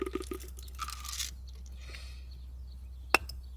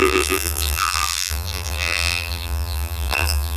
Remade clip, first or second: second